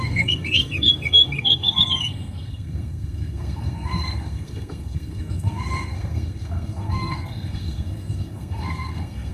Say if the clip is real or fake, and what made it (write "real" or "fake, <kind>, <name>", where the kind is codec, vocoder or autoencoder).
fake, codec, SNAC